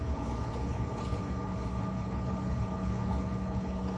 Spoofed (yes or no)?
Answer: yes